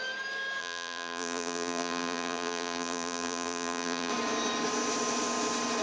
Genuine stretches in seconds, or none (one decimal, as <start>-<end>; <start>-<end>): 0.0-0.6; 4.1-5.8